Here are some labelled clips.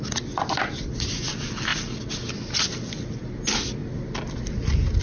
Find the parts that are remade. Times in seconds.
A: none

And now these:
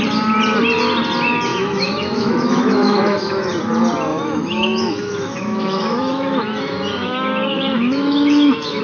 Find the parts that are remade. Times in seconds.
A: 1.5-3.5; 4.1-8.8